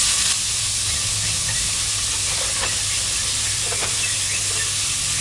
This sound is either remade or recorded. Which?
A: recorded